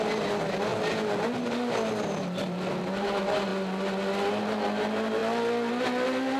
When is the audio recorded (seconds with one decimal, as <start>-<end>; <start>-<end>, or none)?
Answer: 0.0-6.4